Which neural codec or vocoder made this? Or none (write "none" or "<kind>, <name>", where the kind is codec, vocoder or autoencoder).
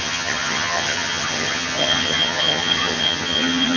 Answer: vocoder, HiFi-GAN